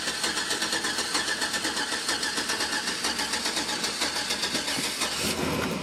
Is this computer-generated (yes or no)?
no